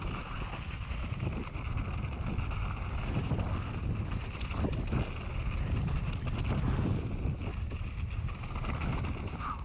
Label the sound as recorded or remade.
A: recorded